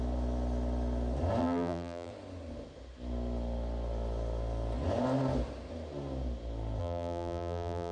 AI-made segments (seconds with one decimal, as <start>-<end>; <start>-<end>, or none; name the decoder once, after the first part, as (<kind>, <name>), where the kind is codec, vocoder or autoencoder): 1.4-2.1 (vocoder, BigVGAN v2); 6.8-7.9